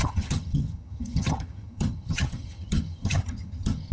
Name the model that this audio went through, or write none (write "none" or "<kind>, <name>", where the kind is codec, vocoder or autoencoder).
vocoder, HiFi-GAN